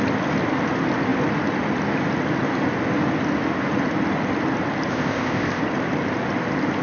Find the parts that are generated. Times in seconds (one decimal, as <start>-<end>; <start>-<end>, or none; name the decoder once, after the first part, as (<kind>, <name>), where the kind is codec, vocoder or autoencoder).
4.9-5.6 (codec, ZipCodec)

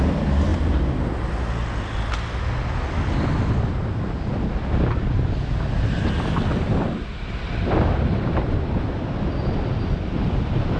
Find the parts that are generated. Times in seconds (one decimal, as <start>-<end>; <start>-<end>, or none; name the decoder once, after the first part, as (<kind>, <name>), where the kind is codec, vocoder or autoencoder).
none

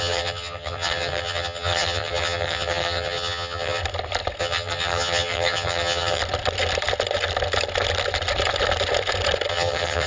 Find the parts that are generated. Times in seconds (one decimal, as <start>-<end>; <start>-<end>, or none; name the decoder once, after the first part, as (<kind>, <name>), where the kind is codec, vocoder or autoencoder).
0.0-3.8 (vocoder, HiFi-GAN); 4.4-6.2; 9.5-10.1

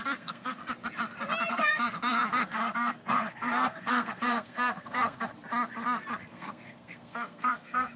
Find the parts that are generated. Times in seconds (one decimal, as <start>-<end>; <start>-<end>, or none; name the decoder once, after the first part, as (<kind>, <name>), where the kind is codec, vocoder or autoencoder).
0.0-0.6 (codec, SNAC); 1.5-5.3; 6.3-8.0

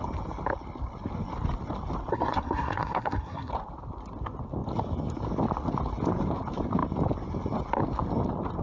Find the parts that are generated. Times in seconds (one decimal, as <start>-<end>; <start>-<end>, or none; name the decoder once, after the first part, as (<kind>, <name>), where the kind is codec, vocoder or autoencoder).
2.1-3.5 (codec, SNAC)

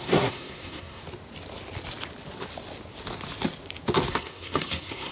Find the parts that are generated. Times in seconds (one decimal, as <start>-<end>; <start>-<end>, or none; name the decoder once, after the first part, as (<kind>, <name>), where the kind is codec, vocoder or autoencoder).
0.0-1.0 (codec, SNAC); 4.1-5.1

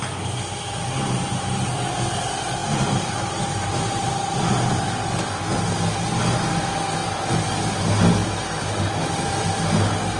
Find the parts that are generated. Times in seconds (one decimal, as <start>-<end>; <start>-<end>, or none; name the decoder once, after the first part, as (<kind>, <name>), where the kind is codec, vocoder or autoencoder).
none